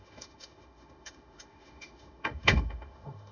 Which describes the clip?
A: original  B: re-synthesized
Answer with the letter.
B